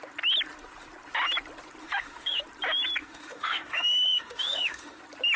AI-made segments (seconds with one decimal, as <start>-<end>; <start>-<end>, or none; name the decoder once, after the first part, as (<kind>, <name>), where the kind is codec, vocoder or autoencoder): 1.8-2.4 (autoencoder, DAC-VAE); 3.0-5.0